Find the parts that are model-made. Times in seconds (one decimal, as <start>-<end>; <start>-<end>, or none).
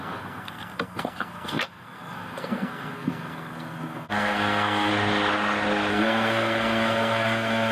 0.0-4.9; 5.9-7.7